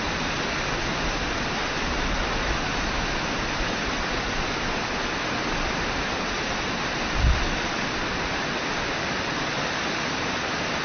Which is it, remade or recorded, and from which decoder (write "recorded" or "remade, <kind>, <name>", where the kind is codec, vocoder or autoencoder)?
recorded